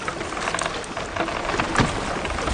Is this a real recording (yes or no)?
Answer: yes